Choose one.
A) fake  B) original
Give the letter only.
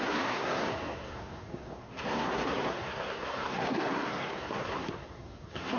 A